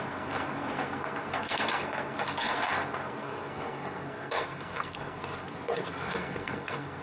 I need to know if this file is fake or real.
fake